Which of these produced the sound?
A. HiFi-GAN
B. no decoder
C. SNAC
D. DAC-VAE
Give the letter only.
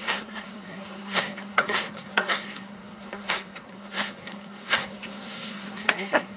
C